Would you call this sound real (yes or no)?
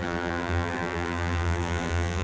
no